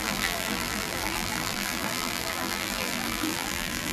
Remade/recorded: remade